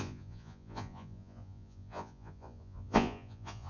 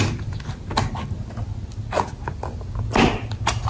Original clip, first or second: second